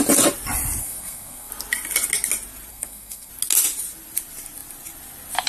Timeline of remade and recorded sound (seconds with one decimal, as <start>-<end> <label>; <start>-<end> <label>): 0.0-0.8 recorded; 0.8-1.5 remade; 1.5-2.7 recorded; 2.7-3.3 remade; 3.3-5.5 recorded